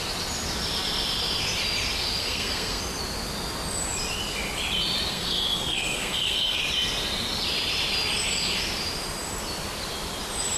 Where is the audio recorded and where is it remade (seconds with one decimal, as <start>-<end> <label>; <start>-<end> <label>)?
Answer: 0.0-2.2 recorded; 2.2-2.8 remade; 2.8-5.1 recorded; 5.1-6.6 remade; 6.6-10.6 recorded

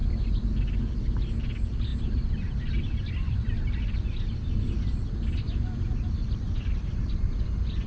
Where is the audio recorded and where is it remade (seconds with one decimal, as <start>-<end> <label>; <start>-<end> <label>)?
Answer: 0.0-7.9 recorded